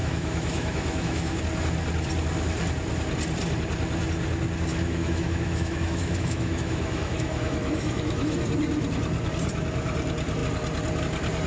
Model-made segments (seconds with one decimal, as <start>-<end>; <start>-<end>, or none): 0.0-1.4; 4.7-8.4